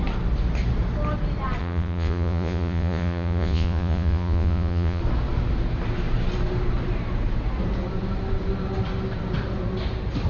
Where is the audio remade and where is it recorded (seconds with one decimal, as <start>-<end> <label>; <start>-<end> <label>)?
0.0-1.6 recorded; 1.6-5.0 remade; 5.0-10.3 recorded